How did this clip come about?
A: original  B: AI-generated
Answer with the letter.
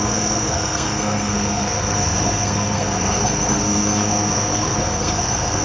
B